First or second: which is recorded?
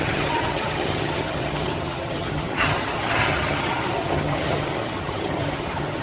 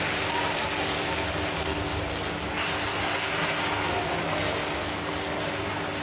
second